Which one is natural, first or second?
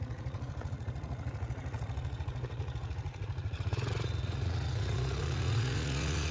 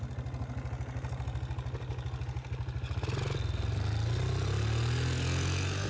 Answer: second